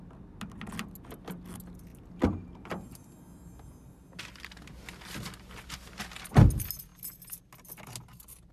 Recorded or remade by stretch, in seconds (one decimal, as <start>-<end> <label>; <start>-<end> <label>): 0.0-8.5 recorded